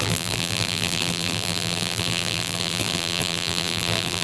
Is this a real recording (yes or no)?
no